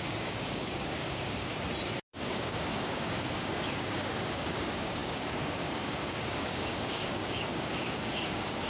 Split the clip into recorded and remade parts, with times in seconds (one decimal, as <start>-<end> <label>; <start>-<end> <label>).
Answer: 0.0-1.5 remade; 1.5-2.2 recorded; 2.2-8.7 remade